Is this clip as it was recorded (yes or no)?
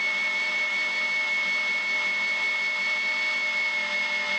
yes